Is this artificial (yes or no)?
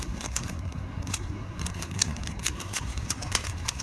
yes